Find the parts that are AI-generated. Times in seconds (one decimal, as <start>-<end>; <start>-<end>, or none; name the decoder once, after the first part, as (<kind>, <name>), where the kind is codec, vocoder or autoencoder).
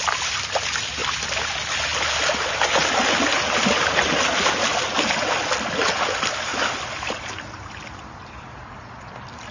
none